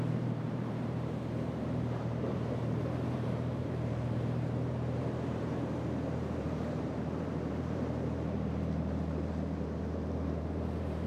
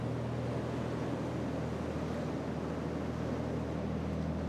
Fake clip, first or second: first